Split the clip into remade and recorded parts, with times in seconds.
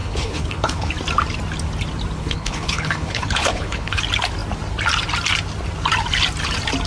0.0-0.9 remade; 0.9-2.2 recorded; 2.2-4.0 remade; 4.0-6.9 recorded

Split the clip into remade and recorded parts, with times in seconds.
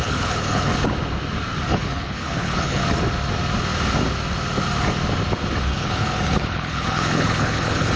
0.0-0.7 remade; 0.7-1.7 recorded; 1.7-2.8 remade; 2.8-5.6 recorded; 5.6-8.0 remade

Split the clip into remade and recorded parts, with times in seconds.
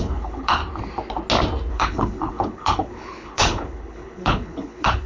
0.0-0.6 remade; 0.6-1.7 recorded; 1.7-5.1 remade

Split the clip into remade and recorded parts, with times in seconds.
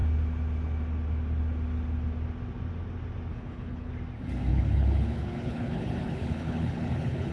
0.0-3.3 recorded; 3.3-3.9 remade; 3.9-4.5 recorded; 4.5-7.3 remade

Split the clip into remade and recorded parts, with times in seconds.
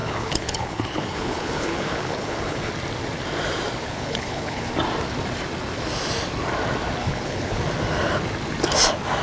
0.0-2.7 remade; 2.7-3.8 recorded; 3.8-4.7 remade; 4.7-7.0 recorded; 7.0-7.6 remade; 7.6-9.2 recorded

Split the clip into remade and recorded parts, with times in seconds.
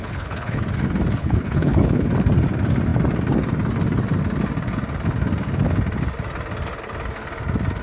0.0-0.6 remade; 0.6-1.2 recorded; 1.2-2.1 remade; 2.1-7.8 recorded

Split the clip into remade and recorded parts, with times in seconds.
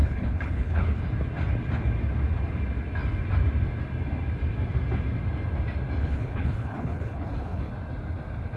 0.0-1.0 remade; 1.0-6.0 recorded; 6.0-7.7 remade; 7.7-8.6 recorded